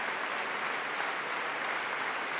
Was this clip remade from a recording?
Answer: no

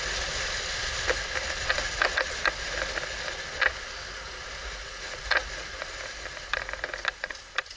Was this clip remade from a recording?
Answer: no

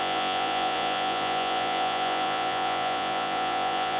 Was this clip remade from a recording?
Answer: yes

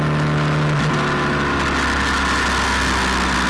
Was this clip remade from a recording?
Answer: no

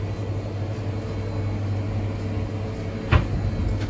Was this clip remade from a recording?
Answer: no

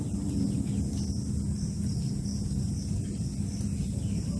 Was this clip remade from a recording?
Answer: no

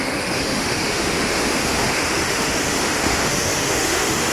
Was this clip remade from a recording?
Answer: yes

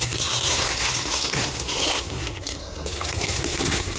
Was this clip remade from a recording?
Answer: yes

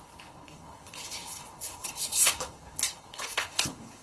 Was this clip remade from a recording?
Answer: yes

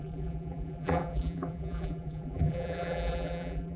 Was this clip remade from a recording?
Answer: yes